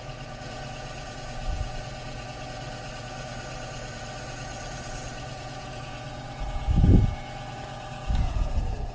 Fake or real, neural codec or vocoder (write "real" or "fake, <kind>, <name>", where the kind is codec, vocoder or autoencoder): fake, vocoder, Vocos